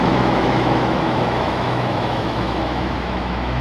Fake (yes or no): yes